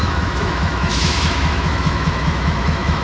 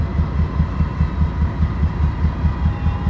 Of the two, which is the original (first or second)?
second